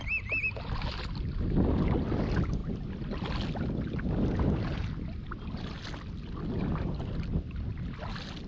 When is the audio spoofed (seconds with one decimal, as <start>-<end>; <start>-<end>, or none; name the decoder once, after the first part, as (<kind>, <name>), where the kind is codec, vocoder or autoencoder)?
none